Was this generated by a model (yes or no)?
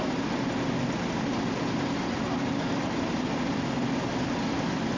no